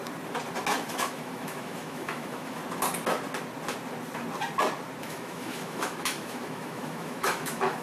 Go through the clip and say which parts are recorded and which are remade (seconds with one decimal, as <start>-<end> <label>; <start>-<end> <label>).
0.0-0.9 recorded; 0.9-2.6 remade; 2.6-5.0 recorded; 5.0-7.8 remade